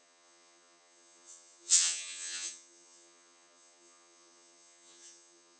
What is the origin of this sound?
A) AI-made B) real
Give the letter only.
A